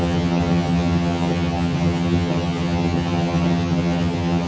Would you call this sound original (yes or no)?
no